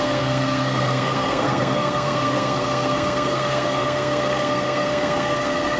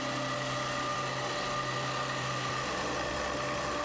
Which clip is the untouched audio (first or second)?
second